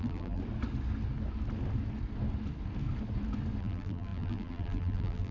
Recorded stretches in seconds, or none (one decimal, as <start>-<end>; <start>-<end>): 0.4-3.6

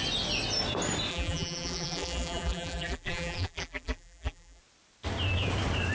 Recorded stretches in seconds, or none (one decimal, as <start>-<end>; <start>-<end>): 0.0-1.1; 4.6-5.9

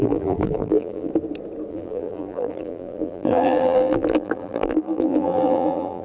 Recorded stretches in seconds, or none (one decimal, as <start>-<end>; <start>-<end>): 1.1-1.7

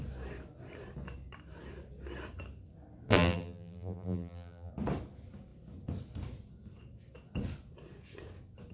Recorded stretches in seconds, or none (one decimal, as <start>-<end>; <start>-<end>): 0.0-3.1; 4.7-8.7

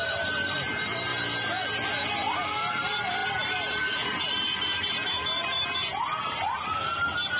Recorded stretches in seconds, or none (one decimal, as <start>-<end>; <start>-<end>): 1.1-2.7

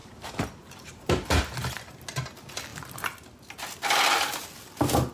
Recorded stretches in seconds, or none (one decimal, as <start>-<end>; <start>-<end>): 2.0-5.1